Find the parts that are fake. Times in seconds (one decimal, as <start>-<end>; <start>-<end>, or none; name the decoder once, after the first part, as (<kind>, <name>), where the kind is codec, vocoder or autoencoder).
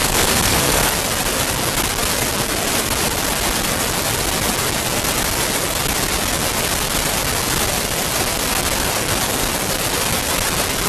0.0-0.9 (codec, SNAC)